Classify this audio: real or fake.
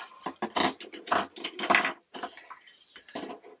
real